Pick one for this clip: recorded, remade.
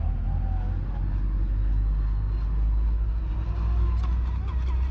recorded